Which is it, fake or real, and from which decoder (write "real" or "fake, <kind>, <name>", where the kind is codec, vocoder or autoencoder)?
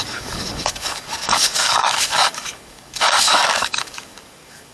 fake, codec, DAC